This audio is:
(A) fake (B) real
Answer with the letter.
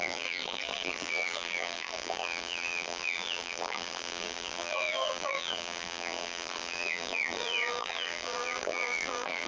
A